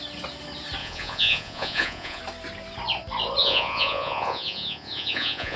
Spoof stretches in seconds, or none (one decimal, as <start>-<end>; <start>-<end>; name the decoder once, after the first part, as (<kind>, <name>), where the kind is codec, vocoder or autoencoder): 0.8-2.2 (vocoder, Vocos); 3.4-5.6